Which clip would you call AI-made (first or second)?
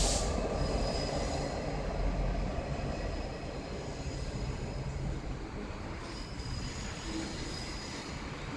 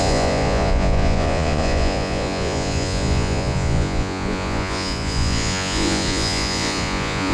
second